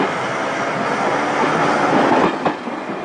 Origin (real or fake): real